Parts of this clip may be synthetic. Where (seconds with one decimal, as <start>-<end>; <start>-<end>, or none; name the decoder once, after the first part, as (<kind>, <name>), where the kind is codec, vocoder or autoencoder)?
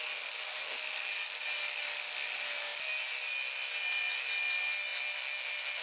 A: none